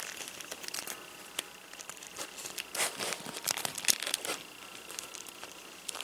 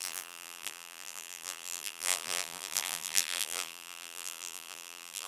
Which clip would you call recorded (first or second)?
first